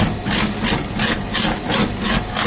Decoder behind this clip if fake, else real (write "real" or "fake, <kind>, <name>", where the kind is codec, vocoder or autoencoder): real